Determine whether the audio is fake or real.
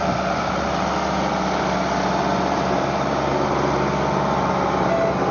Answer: real